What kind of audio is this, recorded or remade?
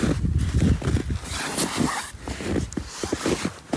recorded